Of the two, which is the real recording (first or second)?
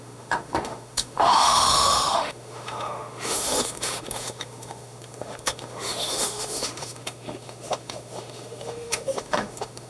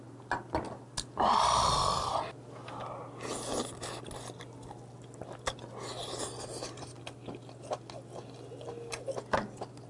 second